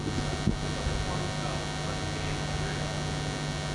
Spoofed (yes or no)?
no